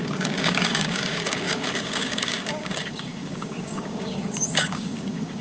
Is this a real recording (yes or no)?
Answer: no